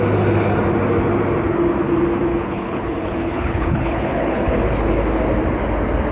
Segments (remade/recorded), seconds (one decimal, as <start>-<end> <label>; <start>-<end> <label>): 0.0-2.3 recorded; 2.3-4.9 remade; 4.9-6.1 recorded